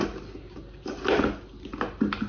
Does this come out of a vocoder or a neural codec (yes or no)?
no